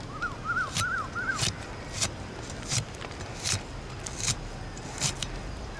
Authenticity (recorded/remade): recorded